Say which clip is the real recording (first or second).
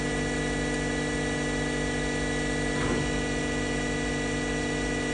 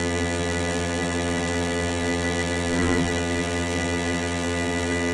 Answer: first